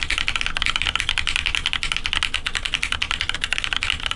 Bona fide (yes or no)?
yes